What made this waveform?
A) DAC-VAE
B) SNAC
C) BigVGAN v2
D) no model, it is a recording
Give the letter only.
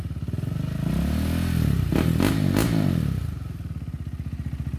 D